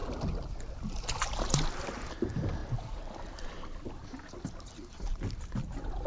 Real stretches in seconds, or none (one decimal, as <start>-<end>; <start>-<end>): 0.0-6.1